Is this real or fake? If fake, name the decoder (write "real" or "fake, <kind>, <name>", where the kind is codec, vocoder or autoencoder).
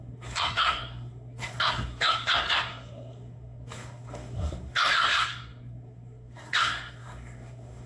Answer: fake, codec, SNAC